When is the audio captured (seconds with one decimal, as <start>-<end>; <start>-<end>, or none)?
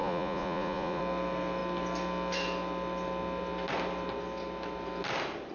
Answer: 1.0-5.5